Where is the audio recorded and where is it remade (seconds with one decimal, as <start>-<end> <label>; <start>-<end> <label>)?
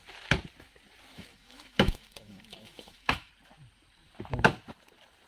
0.0-1.1 recorded; 1.1-3.3 remade; 3.3-5.3 recorded